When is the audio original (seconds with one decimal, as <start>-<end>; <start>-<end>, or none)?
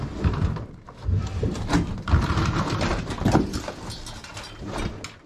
0.0-1.3; 3.4-4.3; 4.8-5.3